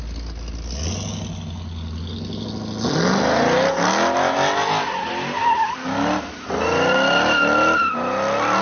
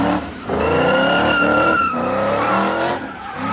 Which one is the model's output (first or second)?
second